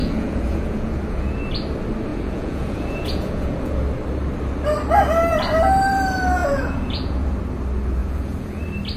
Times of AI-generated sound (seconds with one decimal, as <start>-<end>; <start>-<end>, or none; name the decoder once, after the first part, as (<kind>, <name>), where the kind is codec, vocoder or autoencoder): 0.0-1.4 (vocoder, Vocos); 2.1-3.7; 6.4-7.4; 8.0-8.6